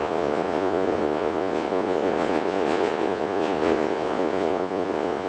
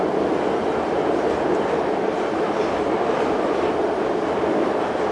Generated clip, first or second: first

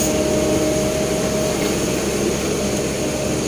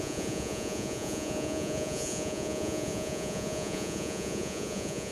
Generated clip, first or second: second